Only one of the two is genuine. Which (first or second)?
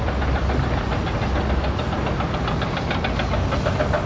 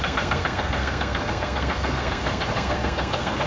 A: first